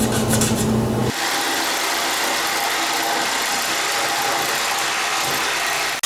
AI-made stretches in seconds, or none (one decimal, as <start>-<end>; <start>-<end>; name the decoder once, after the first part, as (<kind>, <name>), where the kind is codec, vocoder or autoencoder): none